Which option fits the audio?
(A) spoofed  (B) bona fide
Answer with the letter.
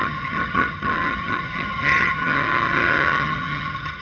A